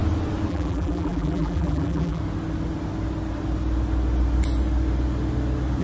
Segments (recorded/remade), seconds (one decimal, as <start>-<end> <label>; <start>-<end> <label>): 0.0-0.5 recorded; 0.5-2.2 remade; 2.2-5.8 recorded